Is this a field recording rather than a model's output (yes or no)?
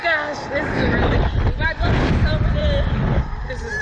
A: no